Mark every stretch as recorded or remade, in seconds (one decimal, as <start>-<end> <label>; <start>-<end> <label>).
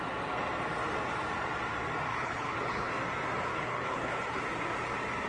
0.0-2.1 recorded; 2.1-2.9 remade; 2.9-3.5 recorded; 3.5-4.4 remade; 4.4-5.3 recorded